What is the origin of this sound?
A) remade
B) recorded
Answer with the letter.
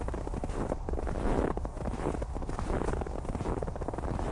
B